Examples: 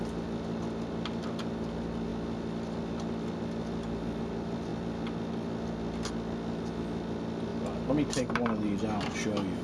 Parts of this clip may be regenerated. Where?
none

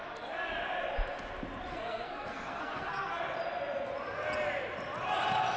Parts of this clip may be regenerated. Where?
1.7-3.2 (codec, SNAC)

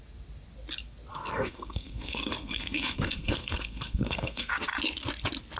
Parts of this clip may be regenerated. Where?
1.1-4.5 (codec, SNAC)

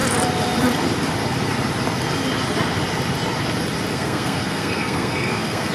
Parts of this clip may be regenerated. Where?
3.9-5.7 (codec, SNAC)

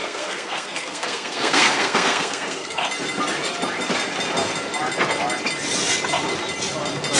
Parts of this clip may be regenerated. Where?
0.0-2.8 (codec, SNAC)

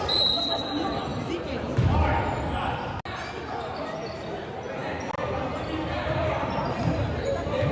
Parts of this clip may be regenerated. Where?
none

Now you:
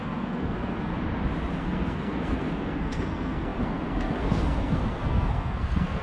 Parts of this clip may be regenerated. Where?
0.0-0.9 (codec, SNAC); 1.5-6.0

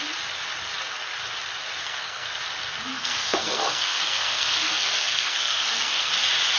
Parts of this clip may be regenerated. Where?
1.8-2.3 (codec, SNAC); 2.9-6.1